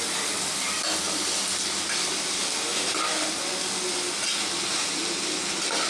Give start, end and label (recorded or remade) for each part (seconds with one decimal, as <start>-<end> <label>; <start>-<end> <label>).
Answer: 0.0-5.9 recorded